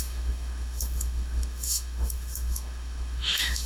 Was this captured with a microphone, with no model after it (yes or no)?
no